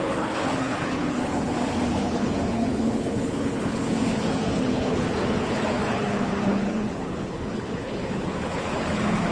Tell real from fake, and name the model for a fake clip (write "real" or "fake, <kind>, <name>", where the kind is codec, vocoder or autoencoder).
fake, codec, HILCodec